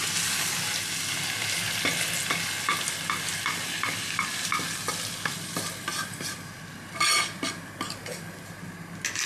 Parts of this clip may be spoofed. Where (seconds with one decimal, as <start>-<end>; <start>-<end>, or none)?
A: none